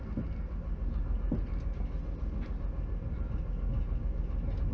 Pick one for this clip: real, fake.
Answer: real